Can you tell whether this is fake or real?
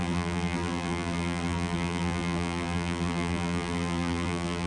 fake